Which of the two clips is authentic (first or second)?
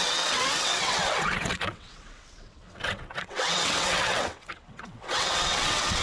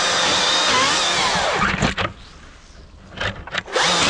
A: second